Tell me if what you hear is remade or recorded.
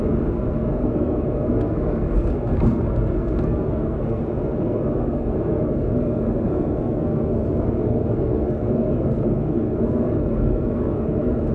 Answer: remade